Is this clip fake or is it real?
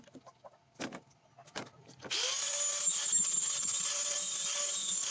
real